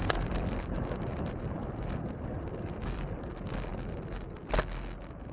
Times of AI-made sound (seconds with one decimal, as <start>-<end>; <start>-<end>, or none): 0.0-3.2